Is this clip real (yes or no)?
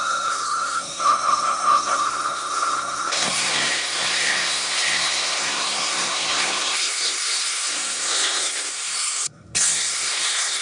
no